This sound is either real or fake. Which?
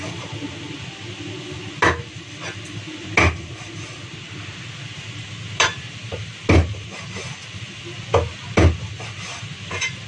real